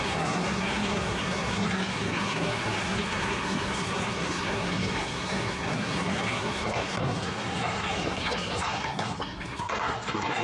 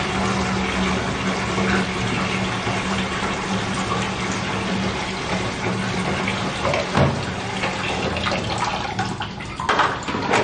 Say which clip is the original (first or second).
second